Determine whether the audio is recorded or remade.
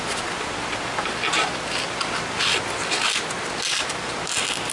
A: recorded